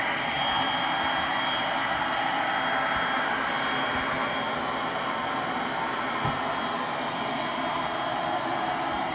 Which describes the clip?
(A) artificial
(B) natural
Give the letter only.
B